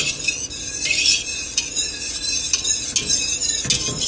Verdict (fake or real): real